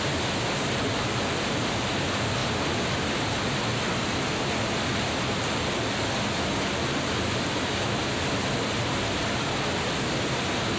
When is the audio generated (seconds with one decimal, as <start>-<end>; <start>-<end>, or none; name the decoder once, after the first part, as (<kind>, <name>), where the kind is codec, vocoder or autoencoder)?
none